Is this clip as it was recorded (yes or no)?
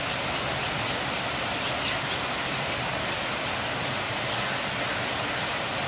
yes